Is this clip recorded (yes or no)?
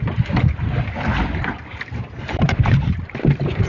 yes